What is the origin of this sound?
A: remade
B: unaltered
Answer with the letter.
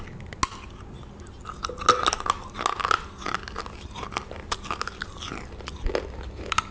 B